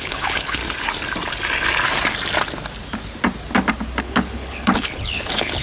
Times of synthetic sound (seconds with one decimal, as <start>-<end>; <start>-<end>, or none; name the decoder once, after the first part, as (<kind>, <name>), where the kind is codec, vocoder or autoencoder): 0.0-0.6 (codec, HILCodec); 4.0-5.6